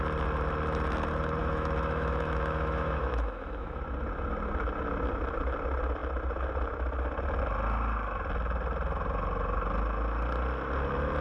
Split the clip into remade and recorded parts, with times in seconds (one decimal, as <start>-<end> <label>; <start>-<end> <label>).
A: 0.0-1.4 recorded; 1.4-3.8 remade; 3.8-11.2 recorded